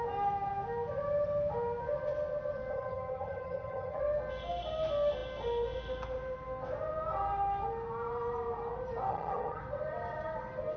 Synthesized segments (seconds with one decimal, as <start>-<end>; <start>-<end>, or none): 2.7-4.0; 9.1-9.6